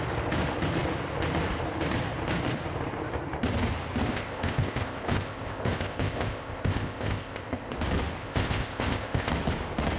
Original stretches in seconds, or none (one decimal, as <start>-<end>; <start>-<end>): 0.0-4.1; 7.7-8.2; 9.3-10.0